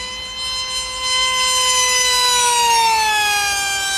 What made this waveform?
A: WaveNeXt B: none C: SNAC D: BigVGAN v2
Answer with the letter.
B